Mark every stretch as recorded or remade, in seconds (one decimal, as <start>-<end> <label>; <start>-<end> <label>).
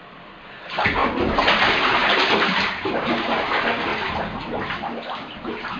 0.0-1.0 remade; 1.0-1.6 recorded; 1.6-3.9 remade; 3.9-5.0 recorded; 5.0-5.8 remade